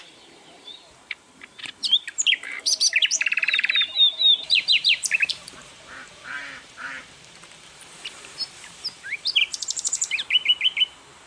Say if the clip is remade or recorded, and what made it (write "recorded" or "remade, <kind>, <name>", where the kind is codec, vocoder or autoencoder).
remade, vocoder, BigVGAN v2